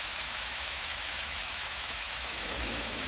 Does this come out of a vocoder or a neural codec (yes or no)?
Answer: yes